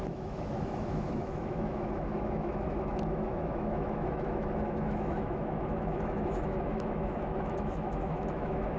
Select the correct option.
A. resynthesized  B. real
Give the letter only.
A